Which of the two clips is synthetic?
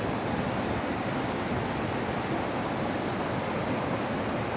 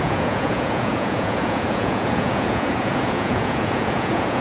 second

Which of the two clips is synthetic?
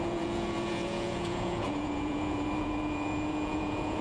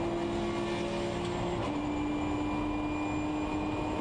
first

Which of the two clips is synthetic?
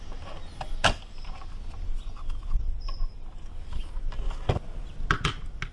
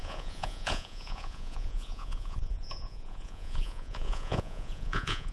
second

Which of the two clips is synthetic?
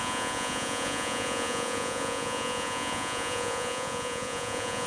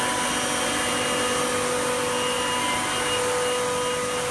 first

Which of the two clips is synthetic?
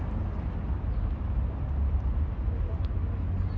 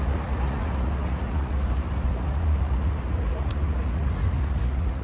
second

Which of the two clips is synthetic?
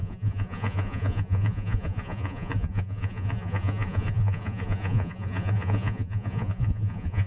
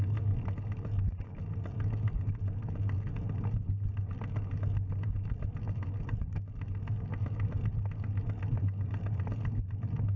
first